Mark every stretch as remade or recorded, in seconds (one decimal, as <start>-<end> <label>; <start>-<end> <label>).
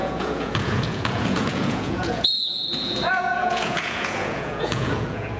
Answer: 0.0-5.4 remade